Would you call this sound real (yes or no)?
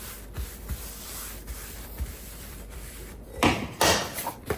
no